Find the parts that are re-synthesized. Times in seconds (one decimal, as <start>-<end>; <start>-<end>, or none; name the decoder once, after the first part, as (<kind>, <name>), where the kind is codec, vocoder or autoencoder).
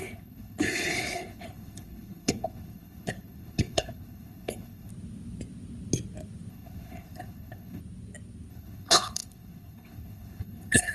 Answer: 0.0-4.9 (codec, HILCodec); 6.5-7.8; 8.5-10.9